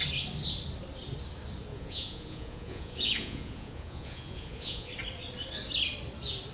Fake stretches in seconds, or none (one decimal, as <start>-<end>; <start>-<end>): 1.7-4.9